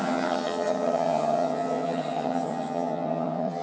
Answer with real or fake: fake